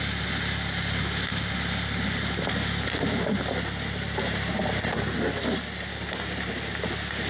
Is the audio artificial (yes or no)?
no